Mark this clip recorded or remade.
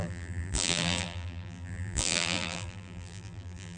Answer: remade